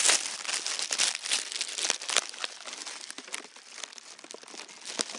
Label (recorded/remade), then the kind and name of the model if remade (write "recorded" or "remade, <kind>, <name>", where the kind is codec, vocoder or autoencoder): recorded